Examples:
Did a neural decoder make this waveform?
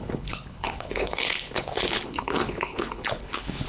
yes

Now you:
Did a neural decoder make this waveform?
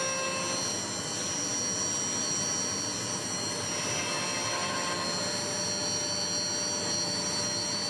no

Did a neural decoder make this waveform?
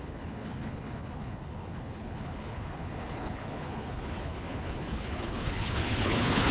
yes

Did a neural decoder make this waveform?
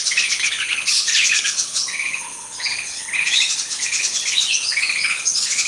yes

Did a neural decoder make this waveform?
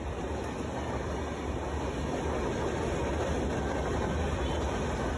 no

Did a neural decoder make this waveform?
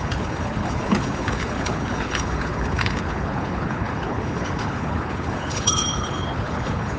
yes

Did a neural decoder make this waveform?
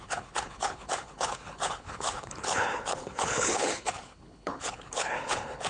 yes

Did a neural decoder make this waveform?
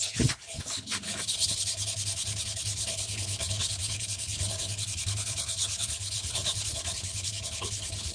yes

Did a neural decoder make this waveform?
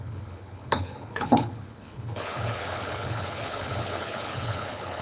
yes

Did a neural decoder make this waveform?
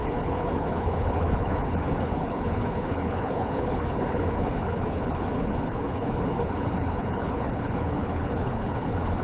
yes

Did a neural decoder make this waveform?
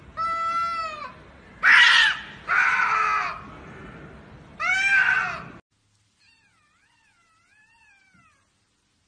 no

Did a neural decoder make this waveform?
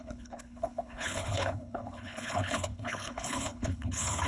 yes